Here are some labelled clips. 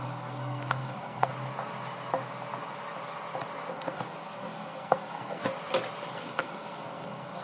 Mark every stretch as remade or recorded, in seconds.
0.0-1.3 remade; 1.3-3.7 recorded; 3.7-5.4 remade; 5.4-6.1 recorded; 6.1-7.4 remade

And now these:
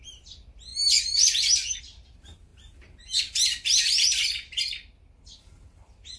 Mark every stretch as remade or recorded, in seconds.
0.0-6.2 recorded

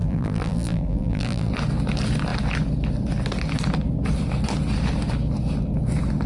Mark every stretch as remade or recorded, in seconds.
0.0-1.5 remade; 1.5-6.3 recorded

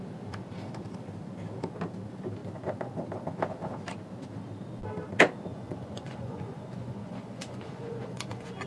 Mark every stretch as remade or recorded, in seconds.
0.0-5.5 recorded; 5.5-8.7 remade

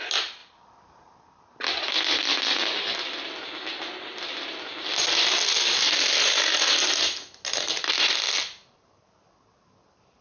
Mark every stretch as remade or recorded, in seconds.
0.0-10.2 recorded

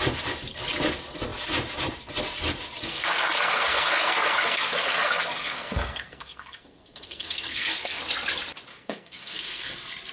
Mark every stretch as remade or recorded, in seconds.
0.0-2.9 recorded; 2.9-8.0 remade; 8.0-8.7 recorded; 8.7-9.7 remade; 9.7-10.1 recorded

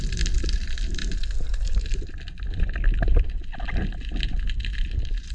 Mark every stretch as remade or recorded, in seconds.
0.0-5.3 recorded

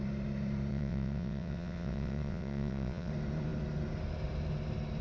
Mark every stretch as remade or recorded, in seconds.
0.0-0.7 recorded; 0.7-3.1 remade; 3.1-5.0 recorded